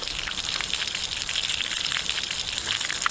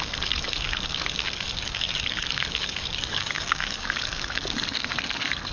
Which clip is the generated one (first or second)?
second